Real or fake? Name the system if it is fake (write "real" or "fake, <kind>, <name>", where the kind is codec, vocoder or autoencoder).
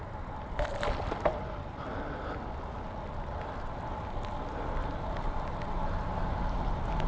real